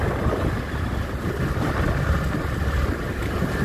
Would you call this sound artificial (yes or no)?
no